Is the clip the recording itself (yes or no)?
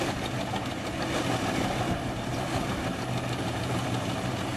yes